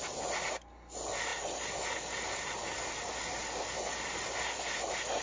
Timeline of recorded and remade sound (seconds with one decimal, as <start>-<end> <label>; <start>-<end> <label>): 0.0-5.2 recorded